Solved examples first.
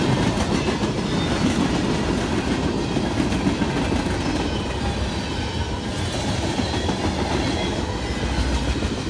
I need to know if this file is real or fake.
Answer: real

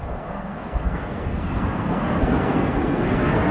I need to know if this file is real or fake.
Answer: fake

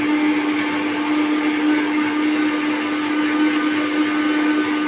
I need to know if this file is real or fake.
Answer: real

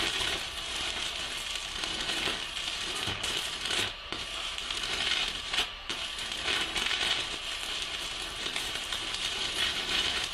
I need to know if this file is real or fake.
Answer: fake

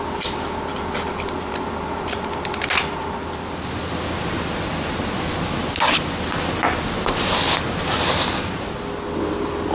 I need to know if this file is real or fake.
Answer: real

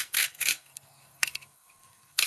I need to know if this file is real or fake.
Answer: fake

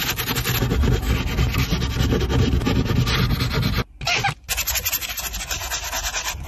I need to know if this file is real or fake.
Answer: real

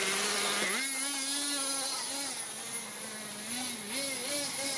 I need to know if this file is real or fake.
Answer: real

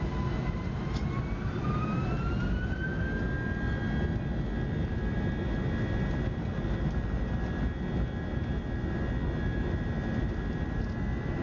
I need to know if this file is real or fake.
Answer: real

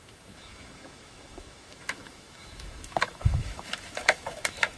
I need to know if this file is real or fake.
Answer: fake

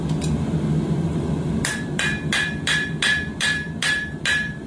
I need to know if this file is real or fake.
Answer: fake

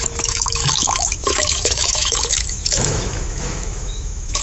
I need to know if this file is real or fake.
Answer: fake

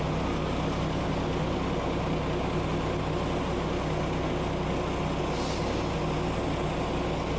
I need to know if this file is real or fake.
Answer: real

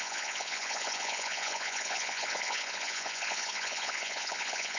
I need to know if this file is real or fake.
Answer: fake